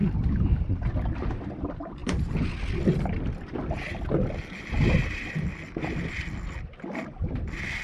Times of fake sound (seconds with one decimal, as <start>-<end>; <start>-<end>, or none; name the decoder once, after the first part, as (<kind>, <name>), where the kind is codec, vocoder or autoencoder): none